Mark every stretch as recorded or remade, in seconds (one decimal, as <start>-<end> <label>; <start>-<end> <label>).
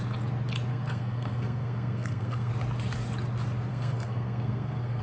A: 0.0-0.7 recorded; 0.7-2.5 remade; 2.5-3.7 recorded; 3.7-5.0 remade